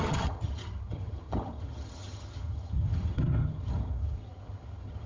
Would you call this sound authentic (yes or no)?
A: no